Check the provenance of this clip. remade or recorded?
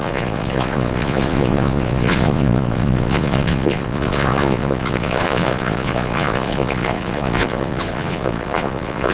remade